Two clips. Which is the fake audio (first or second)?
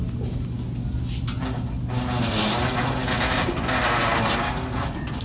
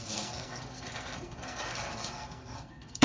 second